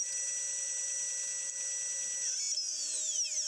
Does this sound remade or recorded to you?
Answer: recorded